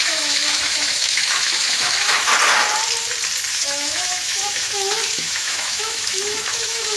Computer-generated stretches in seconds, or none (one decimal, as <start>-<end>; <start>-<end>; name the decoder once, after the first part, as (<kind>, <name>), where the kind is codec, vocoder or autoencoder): 0.0-2.3 (autoencoder, DAC-VAE); 3.5-7.0